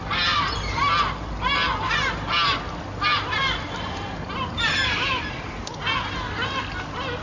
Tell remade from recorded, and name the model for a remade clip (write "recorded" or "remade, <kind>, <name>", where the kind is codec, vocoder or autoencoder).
recorded